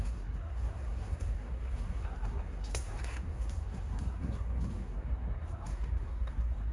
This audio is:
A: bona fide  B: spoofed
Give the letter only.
B